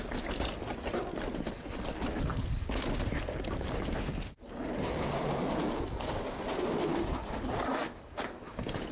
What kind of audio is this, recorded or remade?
recorded